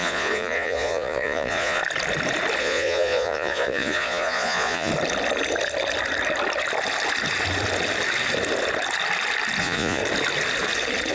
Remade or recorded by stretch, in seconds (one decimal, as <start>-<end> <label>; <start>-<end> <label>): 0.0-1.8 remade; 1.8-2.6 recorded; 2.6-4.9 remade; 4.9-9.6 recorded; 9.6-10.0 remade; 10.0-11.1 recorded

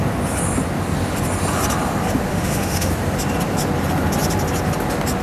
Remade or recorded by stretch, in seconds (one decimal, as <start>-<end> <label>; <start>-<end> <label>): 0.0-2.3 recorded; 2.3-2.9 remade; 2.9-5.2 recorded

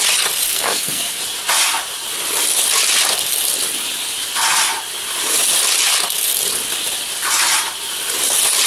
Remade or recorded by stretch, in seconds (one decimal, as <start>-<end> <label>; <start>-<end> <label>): 0.0-0.5 recorded; 0.5-1.2 remade; 1.2-8.7 recorded

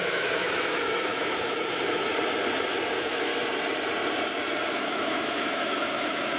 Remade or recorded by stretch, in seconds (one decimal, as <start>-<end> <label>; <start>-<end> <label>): 0.0-2.1 remade; 2.1-2.9 recorded; 2.9-3.3 remade; 3.3-4.7 recorded; 4.7-6.4 remade

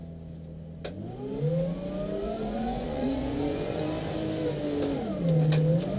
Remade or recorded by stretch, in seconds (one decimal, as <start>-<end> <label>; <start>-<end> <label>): 0.0-2.2 recorded; 2.2-3.8 remade; 3.8-6.0 recorded

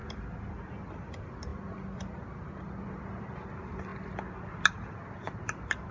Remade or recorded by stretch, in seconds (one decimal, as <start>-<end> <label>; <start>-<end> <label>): 0.0-1.1 recorded; 1.1-3.9 remade; 3.9-4.8 recorded; 4.8-5.9 remade

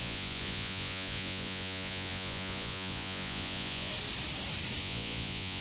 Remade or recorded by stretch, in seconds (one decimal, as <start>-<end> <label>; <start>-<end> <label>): 0.0-3.9 remade; 3.9-4.8 recorded; 4.8-5.6 remade

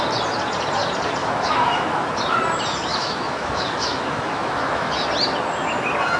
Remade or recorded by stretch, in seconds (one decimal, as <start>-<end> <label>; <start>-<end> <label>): 0.0-1.2 recorded; 1.2-2.1 remade; 2.1-2.9 recorded; 2.9-4.9 remade; 4.9-6.2 recorded